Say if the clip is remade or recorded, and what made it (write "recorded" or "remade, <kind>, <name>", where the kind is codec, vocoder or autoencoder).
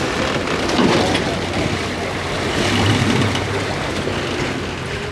recorded